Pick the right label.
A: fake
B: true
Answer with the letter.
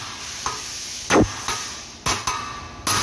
B